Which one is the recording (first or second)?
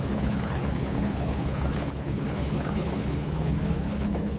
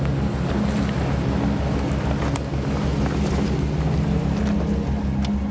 second